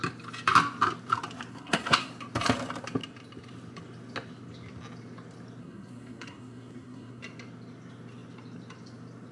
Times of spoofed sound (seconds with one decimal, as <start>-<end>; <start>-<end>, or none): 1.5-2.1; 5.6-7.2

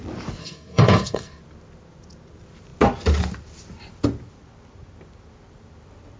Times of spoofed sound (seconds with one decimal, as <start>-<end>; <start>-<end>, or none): 0.4-1.4

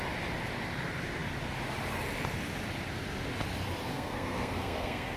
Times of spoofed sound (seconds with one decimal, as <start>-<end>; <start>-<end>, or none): 3.9-5.2

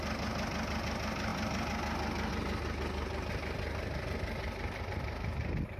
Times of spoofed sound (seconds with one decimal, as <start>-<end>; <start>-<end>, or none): none

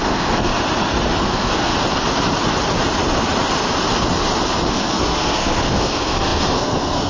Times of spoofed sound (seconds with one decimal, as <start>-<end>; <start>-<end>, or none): 0.0-0.5; 1.2-1.7; 4.7-7.1

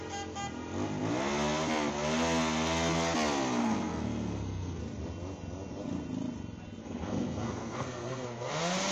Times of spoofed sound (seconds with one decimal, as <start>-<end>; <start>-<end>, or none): 3.6-4.8; 6.8-8.5